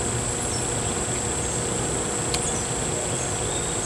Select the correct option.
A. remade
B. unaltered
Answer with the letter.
B